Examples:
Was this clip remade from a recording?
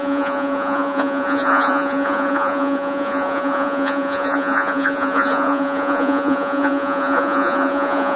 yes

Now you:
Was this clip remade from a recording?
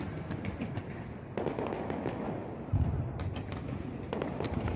no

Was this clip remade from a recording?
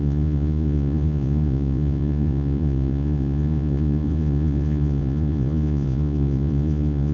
yes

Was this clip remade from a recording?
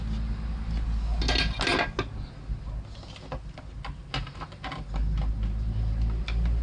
no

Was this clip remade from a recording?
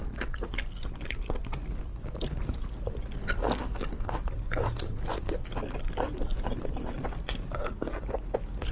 no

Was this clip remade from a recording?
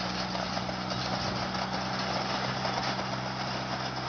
no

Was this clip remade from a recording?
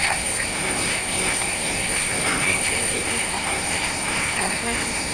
yes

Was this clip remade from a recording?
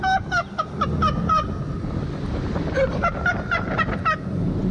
no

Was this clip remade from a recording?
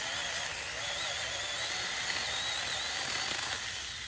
no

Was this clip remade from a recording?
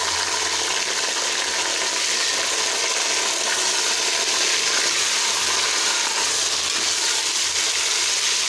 no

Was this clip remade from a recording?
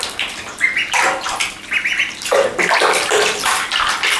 no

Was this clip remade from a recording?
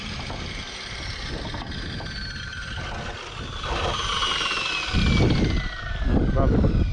no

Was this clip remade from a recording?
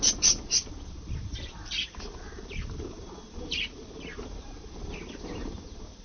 yes